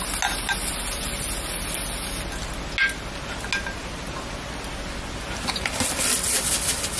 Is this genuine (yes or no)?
yes